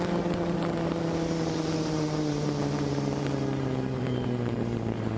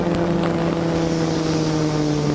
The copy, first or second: first